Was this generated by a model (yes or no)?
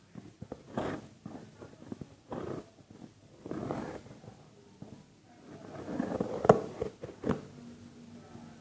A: no